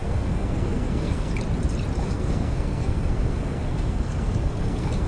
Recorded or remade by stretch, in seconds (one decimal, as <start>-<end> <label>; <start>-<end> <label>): 0.0-1.3 remade; 1.3-2.0 recorded; 2.0-5.1 remade